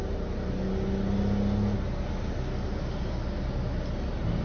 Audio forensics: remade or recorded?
recorded